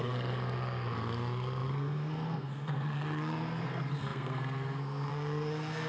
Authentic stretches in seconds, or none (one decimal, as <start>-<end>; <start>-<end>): none